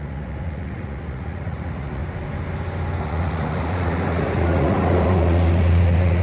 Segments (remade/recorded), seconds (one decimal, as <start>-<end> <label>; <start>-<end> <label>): 0.0-2.0 remade; 2.0-3.0 recorded; 3.0-6.2 remade